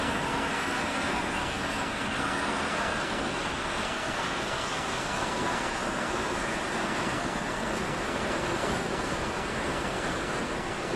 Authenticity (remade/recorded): remade